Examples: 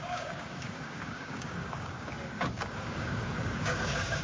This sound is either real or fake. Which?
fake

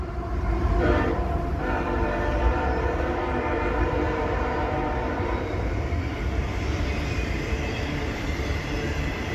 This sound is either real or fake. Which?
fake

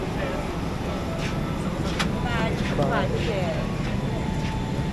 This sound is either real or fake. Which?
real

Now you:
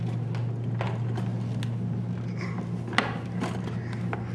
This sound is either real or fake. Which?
real